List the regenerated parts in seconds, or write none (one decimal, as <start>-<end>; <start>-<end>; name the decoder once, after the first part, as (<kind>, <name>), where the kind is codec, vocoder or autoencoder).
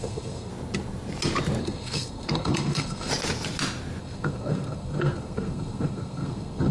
0.0-0.5 (codec, SNAC); 1.6-3.1; 4.0-6.7